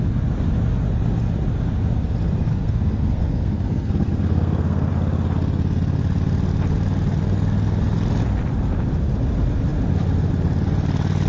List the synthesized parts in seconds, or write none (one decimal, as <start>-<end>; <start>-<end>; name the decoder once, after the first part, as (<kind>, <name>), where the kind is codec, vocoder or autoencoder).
2.5-4.9 (codec, SNAC)